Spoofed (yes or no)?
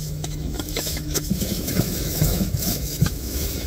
yes